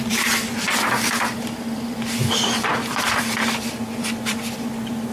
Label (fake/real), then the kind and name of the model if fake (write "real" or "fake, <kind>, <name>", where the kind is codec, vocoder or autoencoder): fake, vocoder, BigVGAN v2